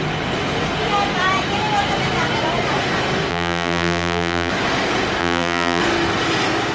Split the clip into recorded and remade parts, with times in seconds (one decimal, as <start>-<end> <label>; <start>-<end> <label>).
0.0-3.3 recorded; 3.3-4.5 remade; 4.5-5.2 recorded; 5.2-5.8 remade; 5.8-6.7 recorded